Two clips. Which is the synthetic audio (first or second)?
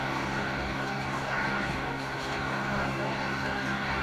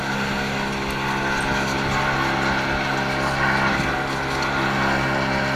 first